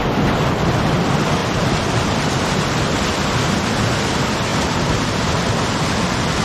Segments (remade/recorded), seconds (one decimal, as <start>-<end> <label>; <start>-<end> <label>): 0.0-1.4 recorded; 1.4-2.6 remade; 2.6-4.5 recorded; 4.5-5.4 remade; 5.4-6.4 recorded

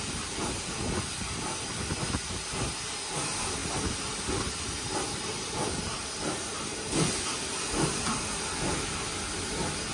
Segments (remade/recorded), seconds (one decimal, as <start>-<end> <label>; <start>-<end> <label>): 0.0-9.9 recorded

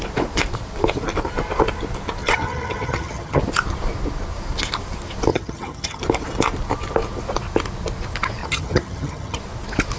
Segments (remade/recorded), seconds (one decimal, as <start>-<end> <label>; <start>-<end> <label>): 0.0-2.2 recorded; 2.2-3.4 remade; 3.4-5.3 recorded; 5.3-6.0 remade; 6.0-8.4 recorded; 8.4-9.4 remade; 9.4-10.0 recorded